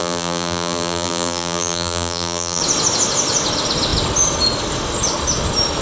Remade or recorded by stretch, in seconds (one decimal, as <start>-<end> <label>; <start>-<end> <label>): 0.0-2.6 remade; 2.6-5.8 recorded